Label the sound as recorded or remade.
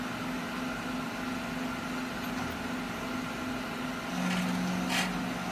recorded